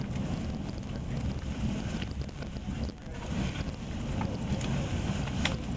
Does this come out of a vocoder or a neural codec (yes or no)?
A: no